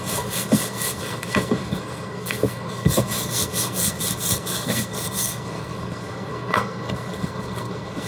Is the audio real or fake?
fake